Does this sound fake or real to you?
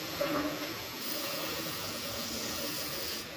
fake